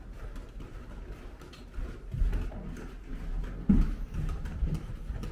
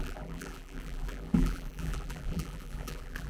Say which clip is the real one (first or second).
first